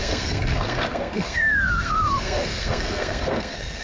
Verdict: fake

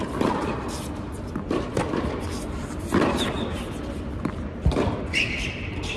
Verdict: real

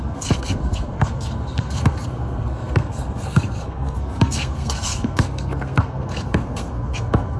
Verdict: fake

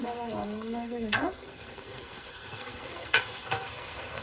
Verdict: fake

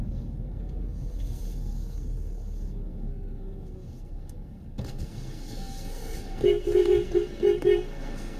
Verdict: fake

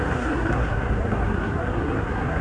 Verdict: fake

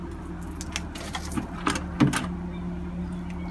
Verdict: real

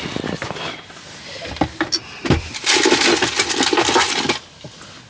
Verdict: real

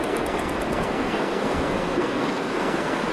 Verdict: fake